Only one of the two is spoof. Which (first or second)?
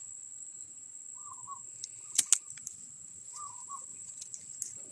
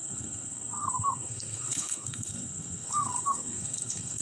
second